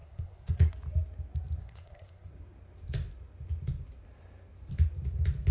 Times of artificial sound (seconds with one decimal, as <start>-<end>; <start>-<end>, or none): 0.0-0.7; 1.6-2.3